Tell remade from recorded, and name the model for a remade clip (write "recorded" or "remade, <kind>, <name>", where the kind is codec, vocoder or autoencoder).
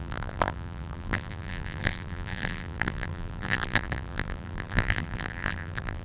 remade, vocoder, BigVGAN v2